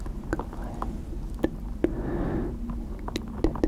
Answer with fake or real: real